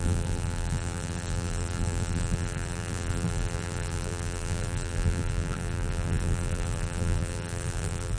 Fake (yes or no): yes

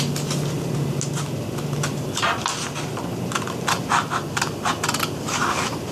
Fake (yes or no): no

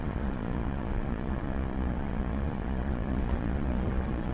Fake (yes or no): yes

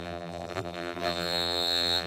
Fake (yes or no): yes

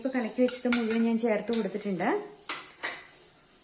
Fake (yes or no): no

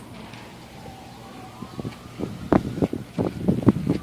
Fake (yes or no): no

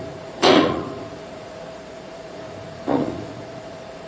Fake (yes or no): yes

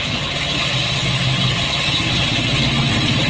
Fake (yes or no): no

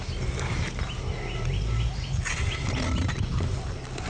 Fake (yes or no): no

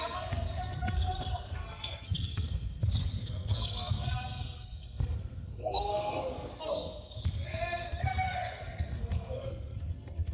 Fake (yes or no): yes